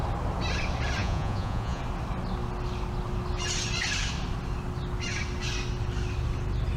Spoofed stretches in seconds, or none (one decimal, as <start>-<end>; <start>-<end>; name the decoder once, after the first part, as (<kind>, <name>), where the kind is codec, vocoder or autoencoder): 1.0-1.8 (vocoder, Vocos)